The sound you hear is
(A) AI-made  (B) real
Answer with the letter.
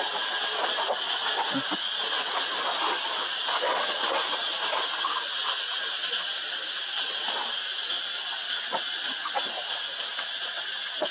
B